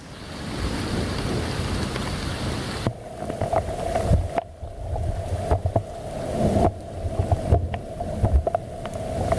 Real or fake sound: real